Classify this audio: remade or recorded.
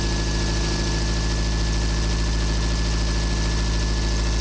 recorded